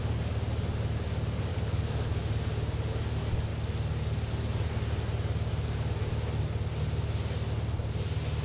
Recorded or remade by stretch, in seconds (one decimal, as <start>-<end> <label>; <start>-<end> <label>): 0.0-1.5 recorded; 1.5-2.2 remade; 2.2-8.4 recorded